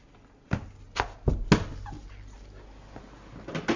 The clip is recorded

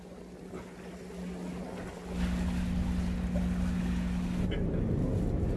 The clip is recorded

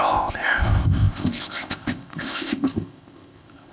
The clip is remade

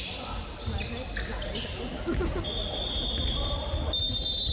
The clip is recorded